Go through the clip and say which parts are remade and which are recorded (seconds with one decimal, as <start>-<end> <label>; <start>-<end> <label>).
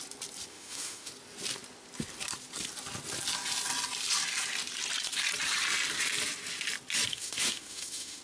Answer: 0.0-0.5 recorded; 0.5-1.1 remade; 1.1-7.1 recorded; 7.1-8.2 remade